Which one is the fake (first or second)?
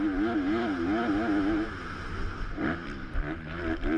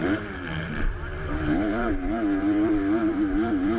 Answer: second